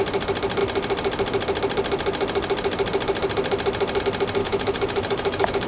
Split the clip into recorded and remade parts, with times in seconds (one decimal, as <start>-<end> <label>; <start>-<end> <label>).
0.0-4.4 recorded; 4.4-5.7 remade